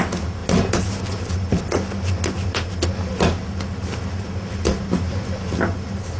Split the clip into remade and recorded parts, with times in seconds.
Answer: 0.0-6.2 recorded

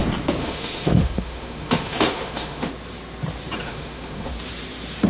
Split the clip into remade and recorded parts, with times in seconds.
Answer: 0.0-0.4 recorded; 0.4-2.7 remade; 2.7-3.6 recorded; 3.6-4.3 remade; 4.3-5.1 recorded

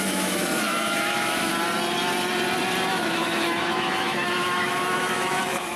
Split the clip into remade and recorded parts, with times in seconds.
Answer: 0.0-1.5 remade; 1.5-2.9 recorded; 2.9-5.8 remade

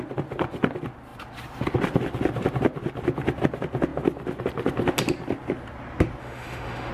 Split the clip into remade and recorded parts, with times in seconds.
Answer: 0.0-6.2 recorded; 6.2-6.9 remade